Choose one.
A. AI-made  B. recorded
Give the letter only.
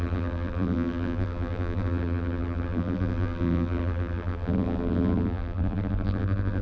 A